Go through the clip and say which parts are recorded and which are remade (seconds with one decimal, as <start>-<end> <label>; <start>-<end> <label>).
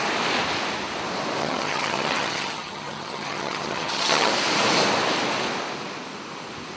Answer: 0.0-1.4 recorded; 1.4-4.3 remade; 4.3-6.8 recorded